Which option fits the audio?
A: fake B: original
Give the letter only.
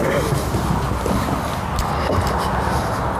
B